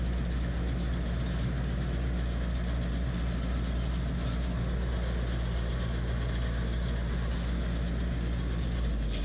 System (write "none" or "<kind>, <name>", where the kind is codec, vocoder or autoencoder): none